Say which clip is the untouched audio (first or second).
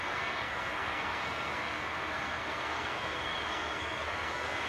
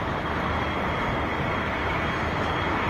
second